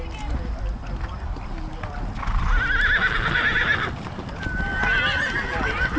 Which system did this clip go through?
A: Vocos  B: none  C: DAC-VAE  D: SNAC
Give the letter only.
B